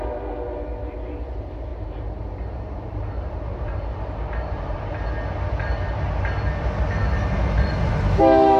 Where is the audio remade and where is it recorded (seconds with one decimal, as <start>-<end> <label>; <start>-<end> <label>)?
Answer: 0.0-1.7 recorded; 1.7-4.9 remade; 4.9-8.6 recorded